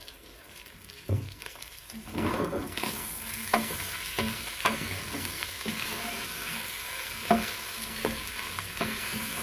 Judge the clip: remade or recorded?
remade